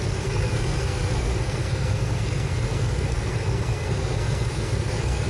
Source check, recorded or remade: remade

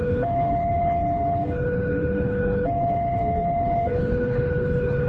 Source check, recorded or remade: remade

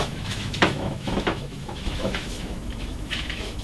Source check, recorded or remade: remade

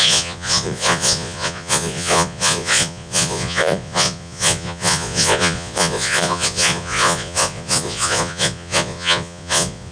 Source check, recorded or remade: remade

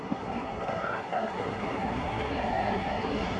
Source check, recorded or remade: remade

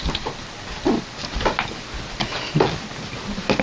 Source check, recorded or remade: recorded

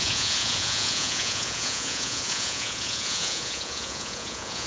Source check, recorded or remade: remade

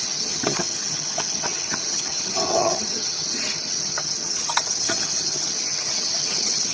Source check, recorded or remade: remade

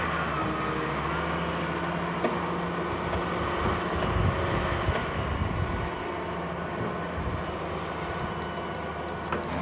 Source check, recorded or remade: recorded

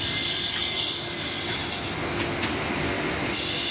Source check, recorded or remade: recorded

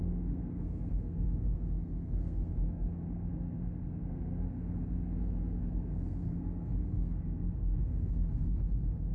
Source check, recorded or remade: remade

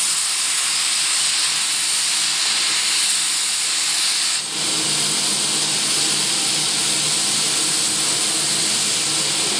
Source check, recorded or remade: recorded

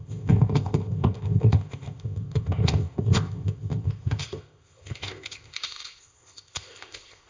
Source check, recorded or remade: remade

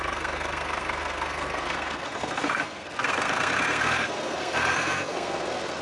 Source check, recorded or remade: remade